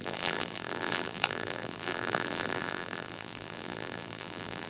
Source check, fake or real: fake